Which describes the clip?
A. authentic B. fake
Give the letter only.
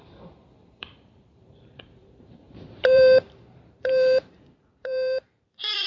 B